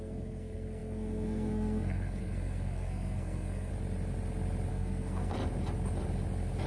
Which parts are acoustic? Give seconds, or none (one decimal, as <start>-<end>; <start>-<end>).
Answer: 3.7-4.7; 5.4-6.7